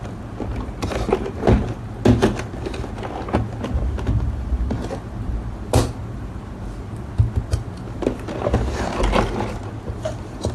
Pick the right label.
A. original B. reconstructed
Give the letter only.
A